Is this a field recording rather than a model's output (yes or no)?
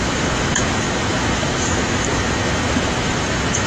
no